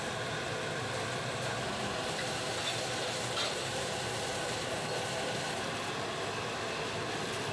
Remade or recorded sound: recorded